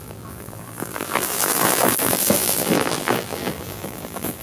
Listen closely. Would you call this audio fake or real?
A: fake